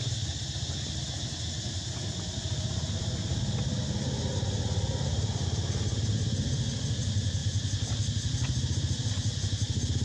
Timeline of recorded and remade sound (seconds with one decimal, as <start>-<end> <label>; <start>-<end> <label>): 0.0-7.4 recorded; 7.4-9.1 remade; 9.1-10.0 recorded